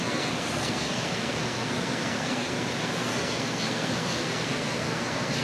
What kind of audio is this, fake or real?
fake